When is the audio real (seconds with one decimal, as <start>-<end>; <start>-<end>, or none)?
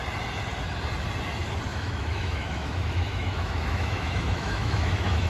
0.0-1.7